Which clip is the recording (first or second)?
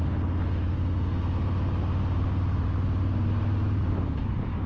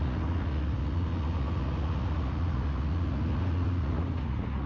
first